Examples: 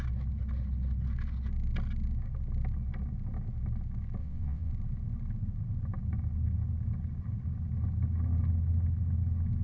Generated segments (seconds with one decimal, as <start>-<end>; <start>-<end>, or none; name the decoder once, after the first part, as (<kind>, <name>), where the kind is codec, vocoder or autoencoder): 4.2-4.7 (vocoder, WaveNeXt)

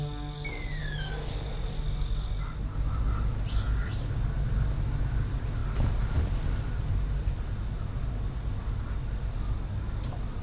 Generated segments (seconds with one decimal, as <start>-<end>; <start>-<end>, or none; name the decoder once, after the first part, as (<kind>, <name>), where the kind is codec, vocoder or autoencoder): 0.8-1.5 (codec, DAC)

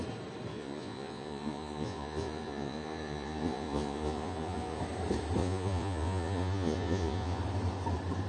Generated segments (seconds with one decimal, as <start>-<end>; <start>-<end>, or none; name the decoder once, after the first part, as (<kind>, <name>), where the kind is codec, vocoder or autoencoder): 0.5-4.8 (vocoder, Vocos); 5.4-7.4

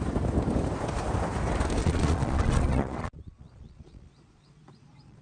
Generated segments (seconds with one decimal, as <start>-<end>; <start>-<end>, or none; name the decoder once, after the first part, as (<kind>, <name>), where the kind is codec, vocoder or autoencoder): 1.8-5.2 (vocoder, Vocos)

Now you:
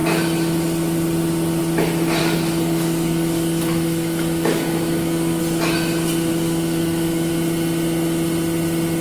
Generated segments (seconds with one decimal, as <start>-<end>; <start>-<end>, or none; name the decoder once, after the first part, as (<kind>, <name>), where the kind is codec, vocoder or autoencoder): 2.2-5.4 (codec, DAC); 6.3-7.3

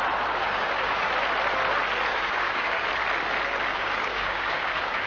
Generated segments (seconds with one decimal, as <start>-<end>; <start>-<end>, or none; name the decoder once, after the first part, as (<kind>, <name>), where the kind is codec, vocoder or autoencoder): 0.4-1.1 (codec, DAC); 2.1-2.9; 3.7-5.1

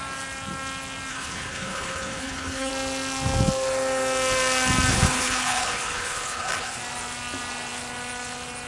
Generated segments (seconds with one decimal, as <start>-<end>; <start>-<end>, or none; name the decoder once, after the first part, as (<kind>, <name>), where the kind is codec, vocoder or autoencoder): 1.1-2.7 (codec, HILCodec); 4.9-6.8

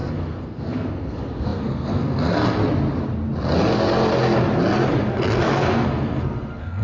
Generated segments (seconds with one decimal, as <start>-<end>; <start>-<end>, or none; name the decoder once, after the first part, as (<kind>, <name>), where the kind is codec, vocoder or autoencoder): 0.0-2.6 (codec, SNAC); 5.0-6.8